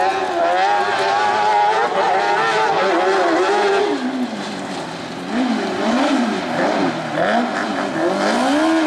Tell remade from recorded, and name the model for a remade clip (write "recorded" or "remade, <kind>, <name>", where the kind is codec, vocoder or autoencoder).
recorded